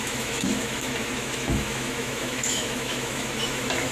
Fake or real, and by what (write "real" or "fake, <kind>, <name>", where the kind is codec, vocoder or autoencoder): fake, autoencoder, DAC-VAE